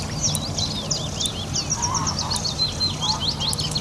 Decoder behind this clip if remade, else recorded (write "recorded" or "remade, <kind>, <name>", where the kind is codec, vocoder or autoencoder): recorded